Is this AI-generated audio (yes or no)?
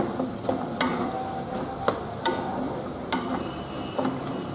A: no